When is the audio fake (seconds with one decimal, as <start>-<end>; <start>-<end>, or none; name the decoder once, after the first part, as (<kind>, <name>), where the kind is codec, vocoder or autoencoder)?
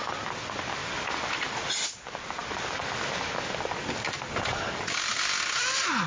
none